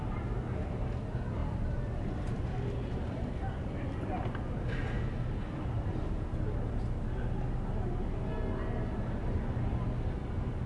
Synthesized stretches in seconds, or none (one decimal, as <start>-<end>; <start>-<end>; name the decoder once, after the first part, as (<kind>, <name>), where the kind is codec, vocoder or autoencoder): none

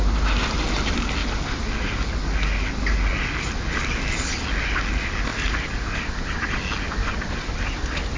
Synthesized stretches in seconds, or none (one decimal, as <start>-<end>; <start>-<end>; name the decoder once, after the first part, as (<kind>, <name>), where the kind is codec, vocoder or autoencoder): 5.3-6.5 (vocoder, BigVGAN v2); 7.0-8.2

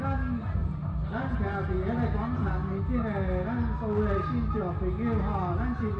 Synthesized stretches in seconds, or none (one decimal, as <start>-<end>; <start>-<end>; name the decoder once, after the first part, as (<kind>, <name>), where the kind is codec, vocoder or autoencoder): 0.6-1.4 (vocoder, BigVGAN v2)

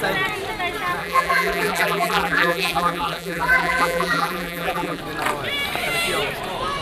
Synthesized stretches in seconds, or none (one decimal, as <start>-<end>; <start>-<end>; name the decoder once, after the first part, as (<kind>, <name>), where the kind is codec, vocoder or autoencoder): 1.0-5.0 (vocoder, BigVGAN v2)

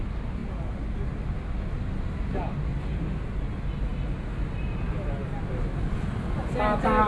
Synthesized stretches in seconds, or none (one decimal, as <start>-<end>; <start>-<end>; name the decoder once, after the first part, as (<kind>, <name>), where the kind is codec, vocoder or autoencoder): 0.4-1.5 (vocoder, BigVGAN v2); 2.7-3.4

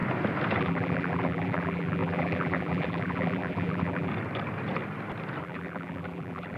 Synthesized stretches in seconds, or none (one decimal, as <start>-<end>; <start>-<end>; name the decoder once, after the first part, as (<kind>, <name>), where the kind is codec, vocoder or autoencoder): 0.6-4.1 (vocoder, BigVGAN v2); 5.4-6.6

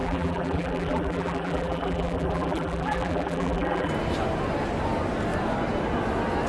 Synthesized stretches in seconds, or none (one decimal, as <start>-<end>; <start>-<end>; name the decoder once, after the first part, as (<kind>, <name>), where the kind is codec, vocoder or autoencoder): 0.0-3.9 (vocoder, BigVGAN v2)

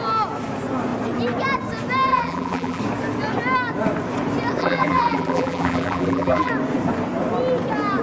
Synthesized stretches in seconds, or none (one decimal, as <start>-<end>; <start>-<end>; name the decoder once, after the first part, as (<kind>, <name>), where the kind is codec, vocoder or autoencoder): 2.1-2.8 (vocoder, BigVGAN v2); 4.6-6.5